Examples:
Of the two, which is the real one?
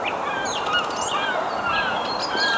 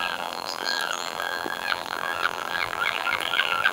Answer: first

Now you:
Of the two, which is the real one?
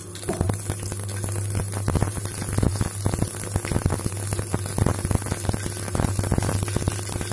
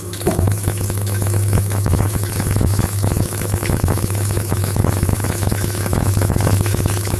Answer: first